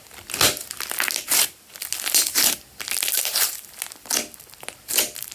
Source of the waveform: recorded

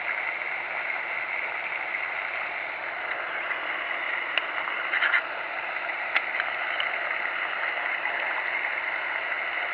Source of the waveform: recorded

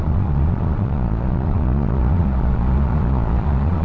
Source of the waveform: remade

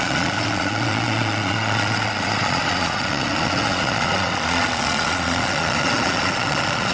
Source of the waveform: remade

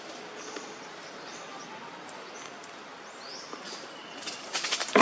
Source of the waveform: recorded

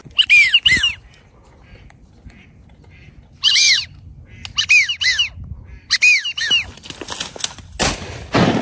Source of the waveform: recorded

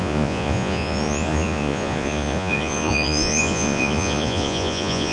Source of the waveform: remade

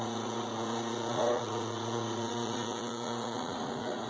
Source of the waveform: remade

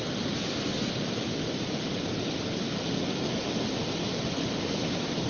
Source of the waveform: recorded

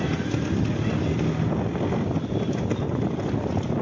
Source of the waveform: recorded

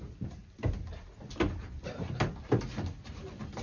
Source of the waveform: recorded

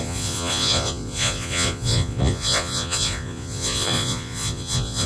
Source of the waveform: remade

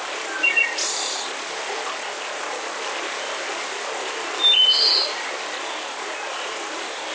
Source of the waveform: recorded